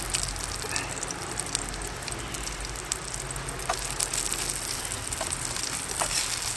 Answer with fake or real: real